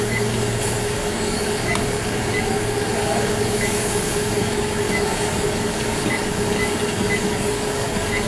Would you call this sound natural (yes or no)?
no